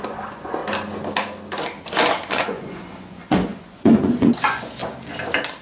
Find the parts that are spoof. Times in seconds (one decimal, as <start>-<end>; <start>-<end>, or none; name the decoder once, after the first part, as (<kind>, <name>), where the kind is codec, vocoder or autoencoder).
0.0-0.6 (vocoder, Vocos); 2.3-4.8